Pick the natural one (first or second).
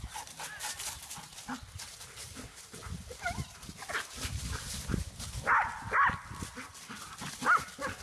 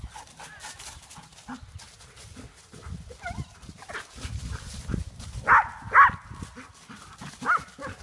second